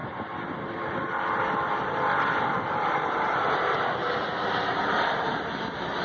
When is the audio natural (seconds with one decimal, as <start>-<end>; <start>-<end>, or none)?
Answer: 3.6-4.0; 5.6-6.0